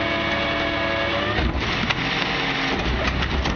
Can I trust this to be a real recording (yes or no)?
yes